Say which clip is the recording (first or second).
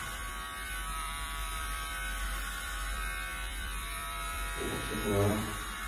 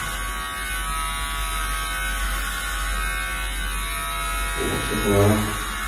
second